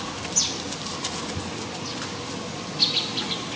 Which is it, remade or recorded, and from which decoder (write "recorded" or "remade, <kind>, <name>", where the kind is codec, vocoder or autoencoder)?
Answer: recorded